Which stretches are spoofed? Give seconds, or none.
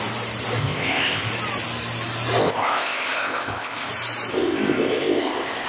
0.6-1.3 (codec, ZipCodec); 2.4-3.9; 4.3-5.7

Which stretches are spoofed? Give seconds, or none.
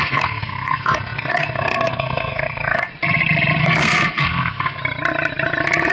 0.0-2.9 (codec, SNAC); 3.6-4.8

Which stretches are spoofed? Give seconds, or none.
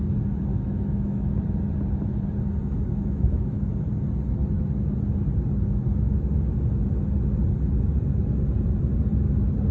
0.5-1.3 (autoencoder, DAC-VAE); 2.6-3.7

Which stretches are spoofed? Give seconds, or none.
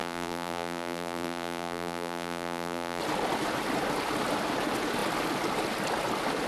0.0-3.0 (vocoder, BigVGAN v2)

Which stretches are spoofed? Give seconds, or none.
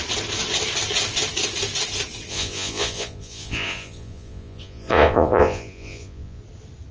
2.3-6.4 (vocoder, Vocos)